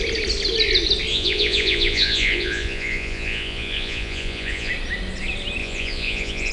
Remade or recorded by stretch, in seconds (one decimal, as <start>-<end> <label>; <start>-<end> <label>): 0.0-1.1 recorded; 1.1-4.7 remade; 4.7-5.6 recorded; 5.6-6.5 remade